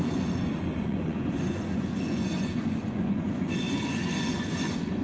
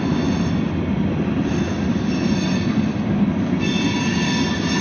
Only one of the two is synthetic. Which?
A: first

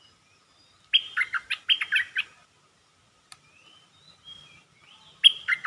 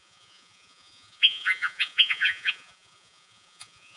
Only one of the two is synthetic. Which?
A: second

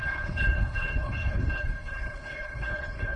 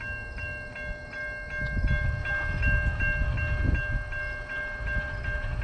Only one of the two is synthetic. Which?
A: first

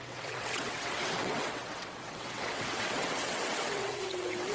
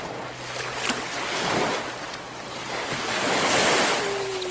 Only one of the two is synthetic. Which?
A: first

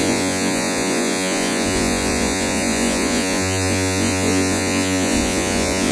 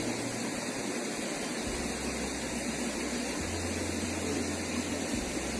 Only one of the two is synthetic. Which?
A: first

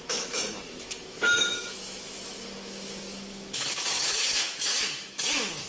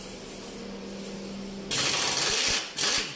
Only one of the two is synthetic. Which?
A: first